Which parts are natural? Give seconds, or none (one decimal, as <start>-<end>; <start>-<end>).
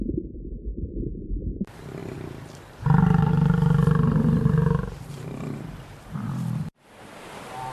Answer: none